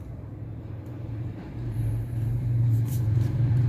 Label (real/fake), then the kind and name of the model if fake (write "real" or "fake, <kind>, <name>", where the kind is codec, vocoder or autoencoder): fake, vocoder, BigVGAN v2